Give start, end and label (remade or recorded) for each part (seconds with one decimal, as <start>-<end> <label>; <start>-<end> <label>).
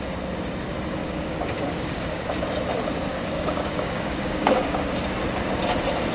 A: 0.0-1.0 recorded; 1.0-2.3 remade; 2.3-3.1 recorded; 3.1-5.0 remade; 5.0-6.1 recorded